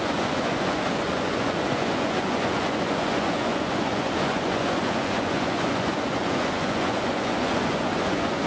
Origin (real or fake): fake